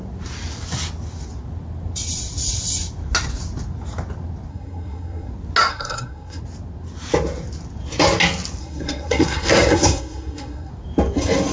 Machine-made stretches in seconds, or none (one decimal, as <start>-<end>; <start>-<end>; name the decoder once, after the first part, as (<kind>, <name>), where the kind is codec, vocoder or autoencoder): 4.5-5.3 (codec, SNAC); 5.7-6.4; 8.6-10.7

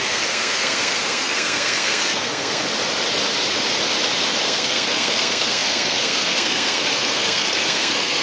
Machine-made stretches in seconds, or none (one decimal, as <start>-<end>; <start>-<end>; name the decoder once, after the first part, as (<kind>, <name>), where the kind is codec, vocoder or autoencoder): 0.0-2.6 (codec, SNAC); 4.4-8.2

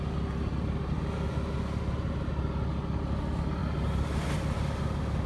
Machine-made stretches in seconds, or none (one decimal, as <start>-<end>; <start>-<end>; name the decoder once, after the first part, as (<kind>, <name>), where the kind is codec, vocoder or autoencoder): none